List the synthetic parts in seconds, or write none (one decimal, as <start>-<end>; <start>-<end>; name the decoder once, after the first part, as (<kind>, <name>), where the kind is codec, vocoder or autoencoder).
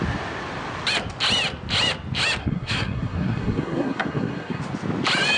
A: 2.4-4.6 (codec, SNAC)